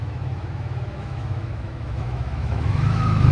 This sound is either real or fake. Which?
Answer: fake